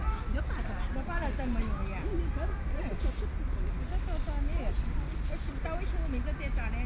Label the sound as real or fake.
real